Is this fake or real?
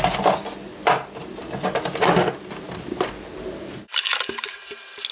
real